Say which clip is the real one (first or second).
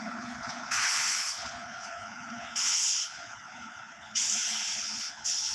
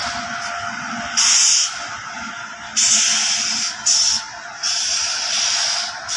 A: second